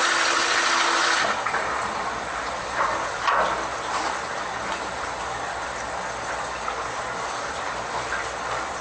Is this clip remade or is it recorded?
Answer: recorded